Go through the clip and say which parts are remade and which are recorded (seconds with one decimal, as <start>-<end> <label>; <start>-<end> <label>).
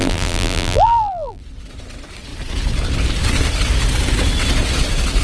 0.0-1.4 remade; 1.4-5.2 recorded